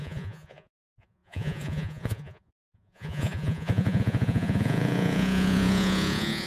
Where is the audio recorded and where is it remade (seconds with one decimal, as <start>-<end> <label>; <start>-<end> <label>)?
0.0-6.5 remade